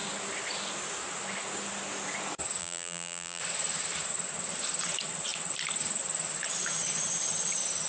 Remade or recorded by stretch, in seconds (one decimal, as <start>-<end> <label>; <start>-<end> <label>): 0.0-2.6 recorded; 2.6-3.4 remade; 3.4-7.9 recorded